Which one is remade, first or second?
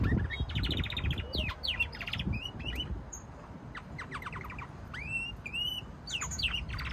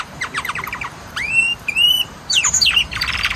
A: second